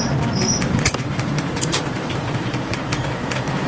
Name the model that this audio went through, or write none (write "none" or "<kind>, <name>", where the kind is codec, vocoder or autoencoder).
vocoder, BigVGAN v2